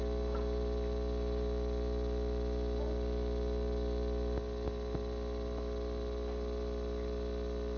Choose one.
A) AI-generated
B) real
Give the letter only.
B